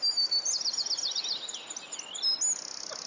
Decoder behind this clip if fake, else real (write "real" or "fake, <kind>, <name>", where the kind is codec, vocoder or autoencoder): real